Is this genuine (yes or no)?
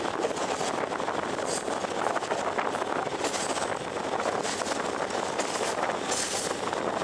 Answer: yes